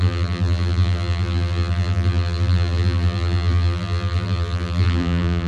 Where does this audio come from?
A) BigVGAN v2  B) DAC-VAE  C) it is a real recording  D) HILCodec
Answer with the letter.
A